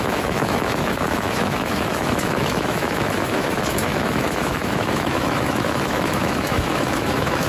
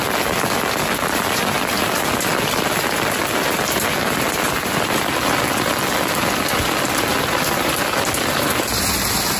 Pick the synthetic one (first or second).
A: first